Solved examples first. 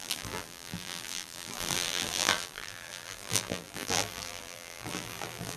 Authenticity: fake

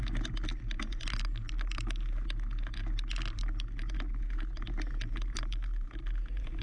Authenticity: real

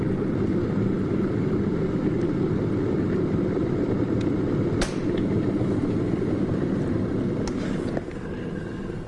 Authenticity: real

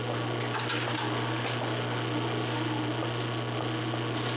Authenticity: real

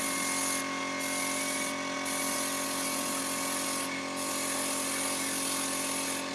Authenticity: real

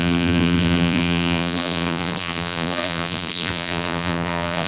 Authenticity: fake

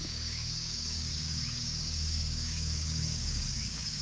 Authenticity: fake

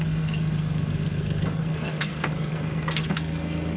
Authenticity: fake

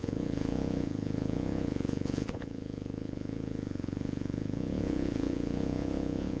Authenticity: fake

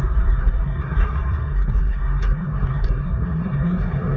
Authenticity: fake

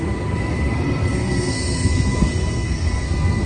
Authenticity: fake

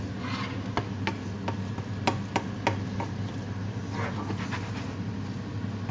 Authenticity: real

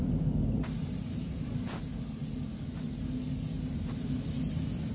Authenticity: real